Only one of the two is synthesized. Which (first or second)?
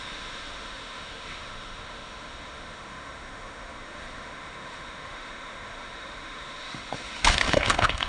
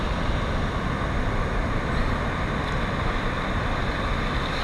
first